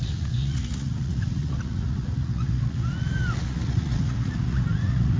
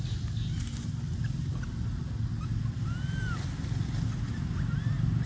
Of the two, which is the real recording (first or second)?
second